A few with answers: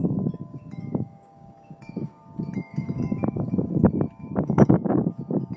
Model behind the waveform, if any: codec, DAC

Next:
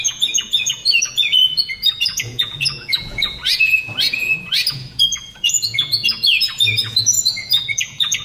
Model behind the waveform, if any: vocoder, Vocos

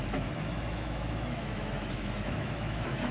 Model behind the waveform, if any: autoencoder, DAC-VAE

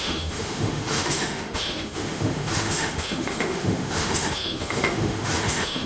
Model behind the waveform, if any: autoencoder, DAC-VAE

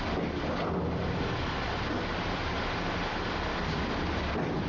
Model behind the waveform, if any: none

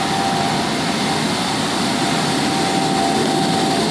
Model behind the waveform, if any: none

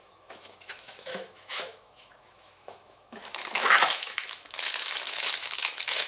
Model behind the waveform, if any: autoencoder, DAC-VAE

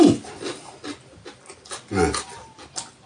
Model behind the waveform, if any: none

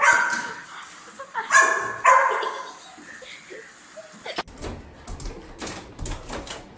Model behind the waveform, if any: none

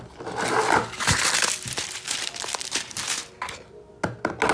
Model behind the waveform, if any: none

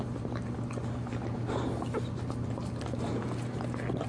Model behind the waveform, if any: none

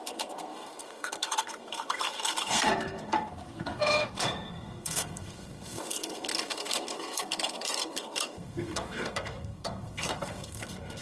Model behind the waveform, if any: codec, SNAC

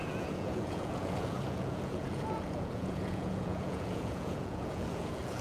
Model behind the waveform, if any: vocoder, Vocos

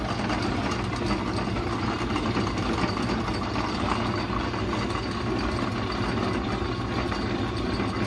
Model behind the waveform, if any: none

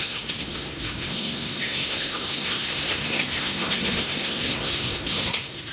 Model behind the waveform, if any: codec, SNAC